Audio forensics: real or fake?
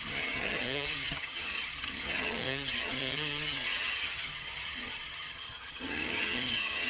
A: fake